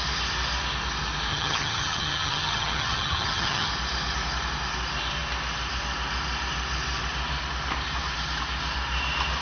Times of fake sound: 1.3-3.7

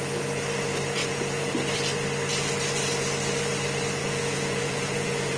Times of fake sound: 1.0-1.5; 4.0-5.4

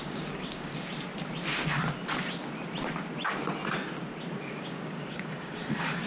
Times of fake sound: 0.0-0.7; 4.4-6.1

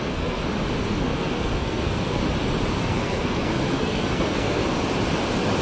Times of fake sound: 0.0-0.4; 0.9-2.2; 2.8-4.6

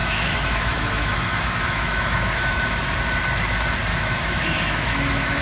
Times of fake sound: 0.0-2.8; 3.9-5.4

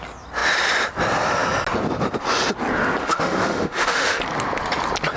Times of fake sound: 3.0-4.2